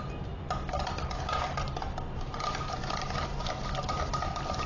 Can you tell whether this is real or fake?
real